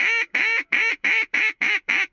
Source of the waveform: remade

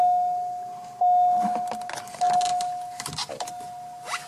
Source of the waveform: recorded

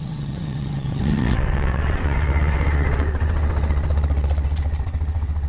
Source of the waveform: remade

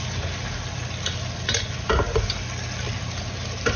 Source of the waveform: recorded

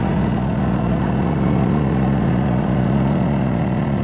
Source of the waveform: remade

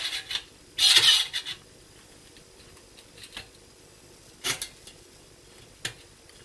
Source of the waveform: recorded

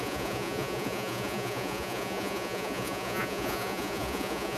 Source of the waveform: remade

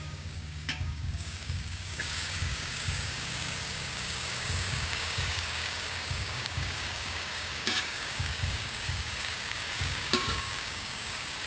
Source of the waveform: remade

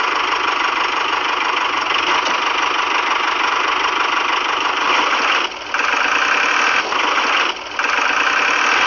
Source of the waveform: recorded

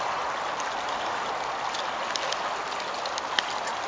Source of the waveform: recorded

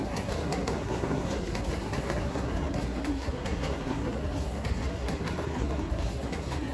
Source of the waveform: remade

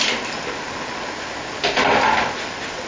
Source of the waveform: recorded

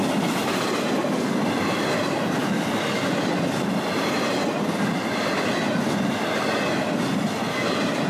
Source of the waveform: recorded